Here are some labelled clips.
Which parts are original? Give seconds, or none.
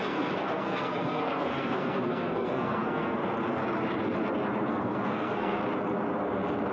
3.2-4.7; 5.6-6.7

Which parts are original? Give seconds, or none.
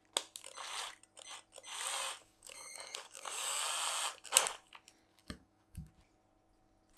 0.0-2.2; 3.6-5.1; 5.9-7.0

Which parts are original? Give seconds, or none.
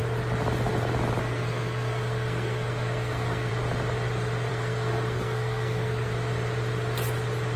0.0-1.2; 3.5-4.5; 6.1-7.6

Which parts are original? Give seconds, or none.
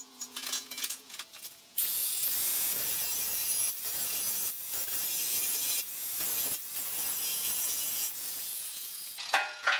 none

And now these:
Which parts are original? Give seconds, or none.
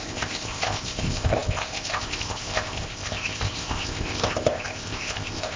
none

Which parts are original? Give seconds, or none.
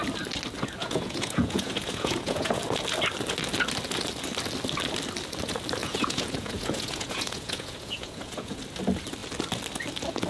0.0-0.8; 2.6-5.8; 8.6-10.3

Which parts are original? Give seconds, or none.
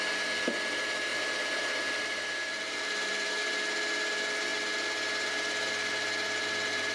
0.0-1.1; 3.4-6.9